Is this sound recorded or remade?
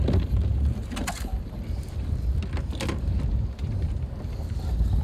recorded